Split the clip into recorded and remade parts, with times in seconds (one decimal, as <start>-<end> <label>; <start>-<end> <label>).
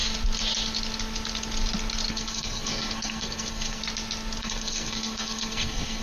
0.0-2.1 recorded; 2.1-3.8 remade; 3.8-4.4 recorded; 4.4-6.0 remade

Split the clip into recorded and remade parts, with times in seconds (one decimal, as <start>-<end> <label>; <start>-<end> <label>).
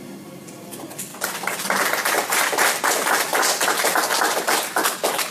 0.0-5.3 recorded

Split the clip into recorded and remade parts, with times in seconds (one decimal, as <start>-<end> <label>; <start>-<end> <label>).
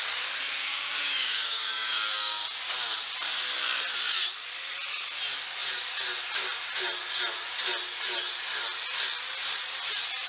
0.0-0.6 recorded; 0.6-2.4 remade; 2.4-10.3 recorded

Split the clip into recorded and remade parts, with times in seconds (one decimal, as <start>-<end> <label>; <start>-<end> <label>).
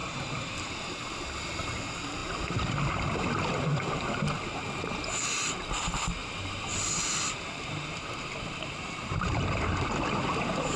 0.0-0.8 remade; 0.8-6.2 recorded; 6.2-10.8 remade